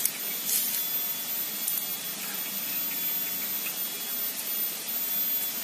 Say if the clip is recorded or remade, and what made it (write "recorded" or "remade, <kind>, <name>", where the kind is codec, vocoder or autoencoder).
recorded